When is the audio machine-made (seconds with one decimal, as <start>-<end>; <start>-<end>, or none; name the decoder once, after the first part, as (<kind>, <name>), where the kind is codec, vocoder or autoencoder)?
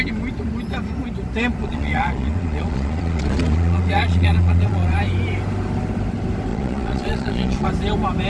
1.6-5.0 (vocoder, Vocos); 6.5-7.7